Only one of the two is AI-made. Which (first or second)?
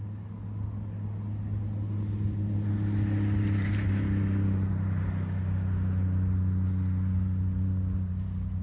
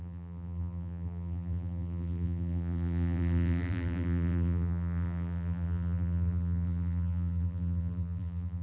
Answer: second